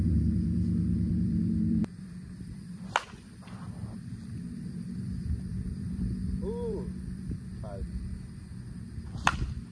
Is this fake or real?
fake